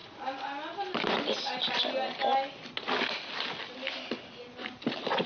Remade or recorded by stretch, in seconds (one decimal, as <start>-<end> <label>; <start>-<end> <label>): 0.0-5.3 recorded